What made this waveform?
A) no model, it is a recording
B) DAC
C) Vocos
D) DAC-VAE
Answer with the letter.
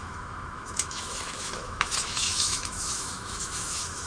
D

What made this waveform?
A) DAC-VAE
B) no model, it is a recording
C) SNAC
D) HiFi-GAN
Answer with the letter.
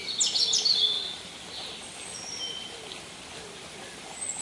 B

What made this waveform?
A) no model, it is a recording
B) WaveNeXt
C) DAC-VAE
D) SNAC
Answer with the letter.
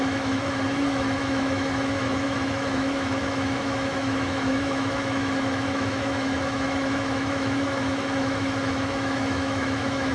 C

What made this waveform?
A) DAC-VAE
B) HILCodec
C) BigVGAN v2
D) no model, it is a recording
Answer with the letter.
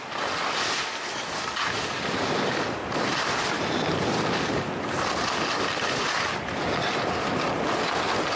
D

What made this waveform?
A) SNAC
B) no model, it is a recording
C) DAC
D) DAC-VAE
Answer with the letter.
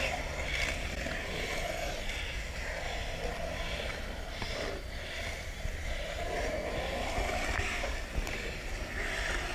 B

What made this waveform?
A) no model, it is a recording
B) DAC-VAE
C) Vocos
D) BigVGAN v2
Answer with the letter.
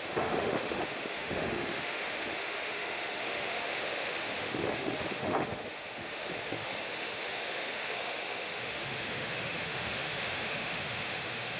B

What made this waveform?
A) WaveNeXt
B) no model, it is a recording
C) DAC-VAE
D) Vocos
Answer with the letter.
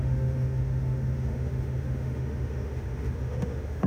C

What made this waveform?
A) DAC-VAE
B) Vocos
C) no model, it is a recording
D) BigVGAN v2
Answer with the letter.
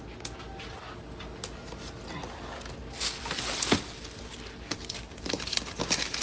C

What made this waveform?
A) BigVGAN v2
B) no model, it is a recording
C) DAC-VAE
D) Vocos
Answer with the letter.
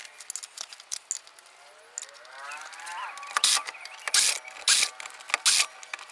B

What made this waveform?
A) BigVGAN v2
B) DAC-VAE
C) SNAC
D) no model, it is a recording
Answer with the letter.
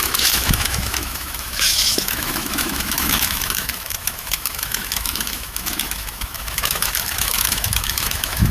B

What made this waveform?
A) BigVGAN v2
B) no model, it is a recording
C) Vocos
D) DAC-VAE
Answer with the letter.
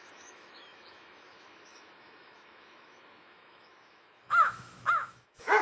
D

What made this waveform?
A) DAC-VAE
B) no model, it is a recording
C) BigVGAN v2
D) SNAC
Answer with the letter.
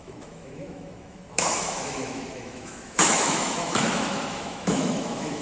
A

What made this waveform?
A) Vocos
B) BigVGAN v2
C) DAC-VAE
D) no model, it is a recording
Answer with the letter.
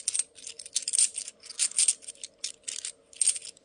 D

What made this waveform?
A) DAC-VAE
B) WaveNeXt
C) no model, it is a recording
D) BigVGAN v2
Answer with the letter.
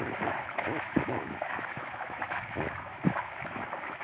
A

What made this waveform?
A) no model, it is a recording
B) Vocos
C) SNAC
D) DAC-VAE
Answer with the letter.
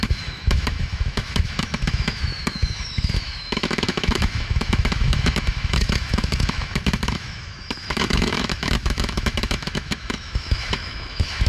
D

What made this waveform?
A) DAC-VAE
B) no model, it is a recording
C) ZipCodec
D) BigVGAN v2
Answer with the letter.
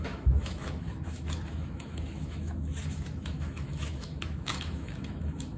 A